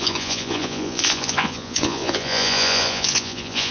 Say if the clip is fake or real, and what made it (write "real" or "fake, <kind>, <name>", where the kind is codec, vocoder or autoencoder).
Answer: fake, vocoder, Vocos